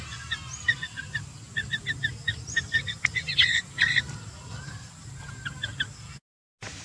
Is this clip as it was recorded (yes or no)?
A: yes